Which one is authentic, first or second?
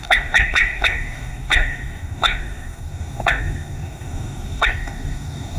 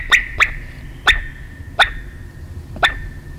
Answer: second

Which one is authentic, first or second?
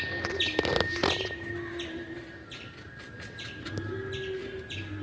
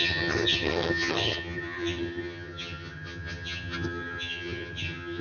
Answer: first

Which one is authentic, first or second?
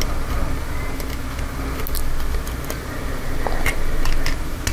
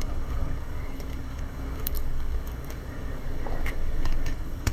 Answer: first